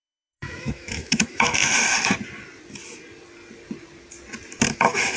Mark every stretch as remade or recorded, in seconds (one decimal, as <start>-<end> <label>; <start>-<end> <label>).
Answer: 0.0-1.6 remade; 1.6-4.7 recorded; 4.7-5.2 remade

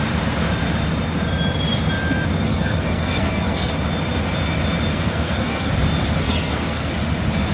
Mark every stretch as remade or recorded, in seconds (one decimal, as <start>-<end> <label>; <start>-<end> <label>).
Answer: 0.0-2.5 recorded; 2.5-3.7 remade; 3.7-4.9 recorded; 4.9-5.7 remade; 5.7-6.2 recorded; 6.2-6.9 remade; 6.9-7.5 recorded